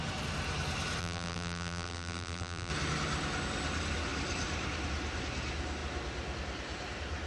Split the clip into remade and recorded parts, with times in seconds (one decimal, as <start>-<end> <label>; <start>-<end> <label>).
0.0-1.0 recorded; 1.0-2.7 remade; 2.7-7.3 recorded